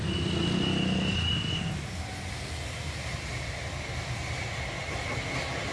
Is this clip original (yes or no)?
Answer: yes